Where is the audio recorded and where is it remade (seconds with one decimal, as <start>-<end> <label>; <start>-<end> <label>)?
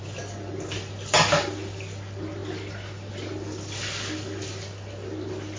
0.0-5.6 recorded